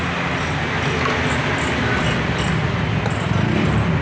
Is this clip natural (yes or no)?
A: yes